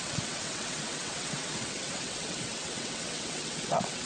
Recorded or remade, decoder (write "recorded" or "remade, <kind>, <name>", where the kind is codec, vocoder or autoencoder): remade, vocoder, WaveNeXt